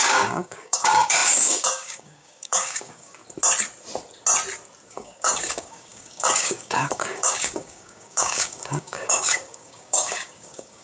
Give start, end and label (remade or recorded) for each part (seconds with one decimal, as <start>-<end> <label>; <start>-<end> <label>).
0.0-3.2 remade; 3.2-4.9 recorded; 4.9-10.8 remade